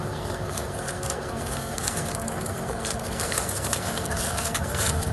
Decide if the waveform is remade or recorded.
remade